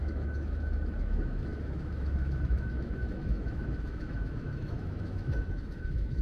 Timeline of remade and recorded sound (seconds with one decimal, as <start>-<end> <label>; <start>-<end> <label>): 0.0-6.2 remade

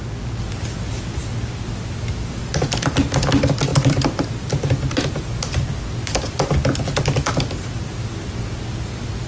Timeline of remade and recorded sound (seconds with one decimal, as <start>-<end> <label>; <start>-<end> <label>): 0.0-9.3 recorded

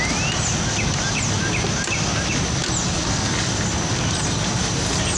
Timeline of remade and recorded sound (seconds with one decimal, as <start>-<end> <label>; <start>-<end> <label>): 0.0-5.2 recorded

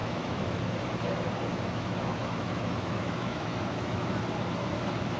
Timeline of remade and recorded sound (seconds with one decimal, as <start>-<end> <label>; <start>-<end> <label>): 0.0-0.6 remade; 0.6-1.5 recorded; 1.5-4.2 remade; 4.2-5.2 recorded

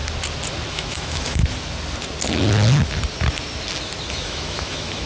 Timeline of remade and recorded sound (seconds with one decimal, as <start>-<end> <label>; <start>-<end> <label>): 0.0-0.7 recorded; 0.7-1.4 remade; 1.4-4.1 recorded; 4.1-5.1 remade

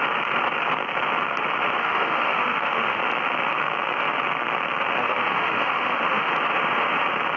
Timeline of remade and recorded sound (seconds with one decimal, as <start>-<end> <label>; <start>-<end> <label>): 0.0-1.8 recorded; 1.8-3.0 remade; 3.0-5.0 recorded; 5.0-6.3 remade; 6.3-7.4 recorded

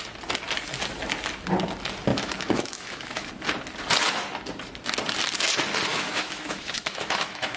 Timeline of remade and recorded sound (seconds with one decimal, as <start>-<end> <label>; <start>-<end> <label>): 0.0-2.1 recorded; 2.1-3.3 remade; 3.3-5.9 recorded; 5.9-7.6 remade

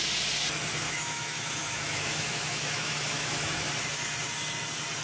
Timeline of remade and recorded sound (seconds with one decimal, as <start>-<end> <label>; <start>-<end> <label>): 0.0-0.7 recorded; 0.7-3.7 remade; 3.7-5.0 recorded